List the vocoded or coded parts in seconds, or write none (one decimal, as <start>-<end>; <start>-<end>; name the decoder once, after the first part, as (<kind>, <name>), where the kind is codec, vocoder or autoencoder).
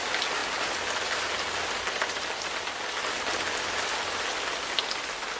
none